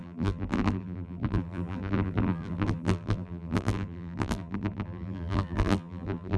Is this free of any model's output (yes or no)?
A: no